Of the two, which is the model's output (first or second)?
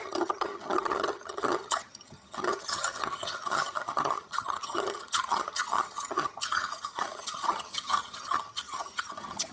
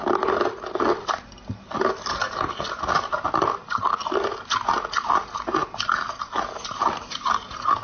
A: first